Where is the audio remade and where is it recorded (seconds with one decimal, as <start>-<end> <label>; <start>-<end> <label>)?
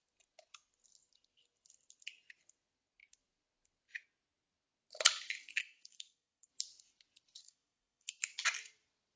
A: 0.0-5.6 recorded; 5.6-6.5 remade; 6.5-7.4 recorded; 7.4-8.2 remade; 8.2-9.2 recorded